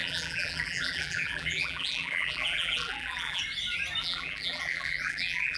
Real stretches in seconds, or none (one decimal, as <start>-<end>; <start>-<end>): 3.4-4.0

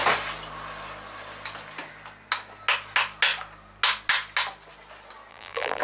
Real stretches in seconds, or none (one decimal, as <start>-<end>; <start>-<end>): 0.0-5.3

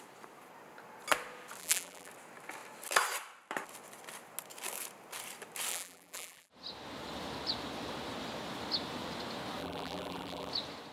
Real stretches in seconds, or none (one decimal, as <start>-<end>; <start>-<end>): 0.0-1.6; 2.1-5.7; 6.5-9.6; 10.5-10.9